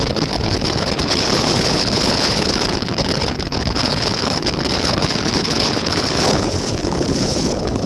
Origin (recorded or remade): remade